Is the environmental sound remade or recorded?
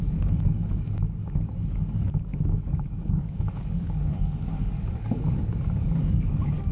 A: remade